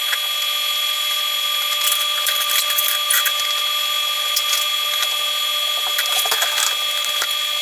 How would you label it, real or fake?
real